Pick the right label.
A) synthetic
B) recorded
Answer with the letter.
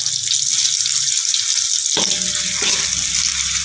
B